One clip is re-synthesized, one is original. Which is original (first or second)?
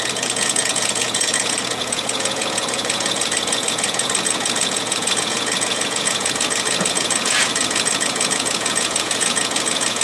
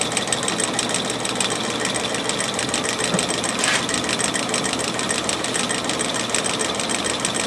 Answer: second